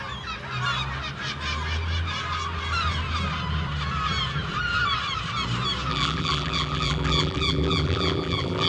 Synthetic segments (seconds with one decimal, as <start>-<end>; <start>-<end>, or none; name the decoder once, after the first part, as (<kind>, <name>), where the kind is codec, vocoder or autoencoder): 5.9-8.7 (vocoder, BigVGAN v2)